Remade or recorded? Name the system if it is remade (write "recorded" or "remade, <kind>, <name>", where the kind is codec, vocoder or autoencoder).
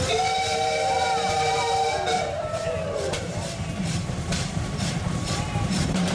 remade, vocoder, BigVGAN v2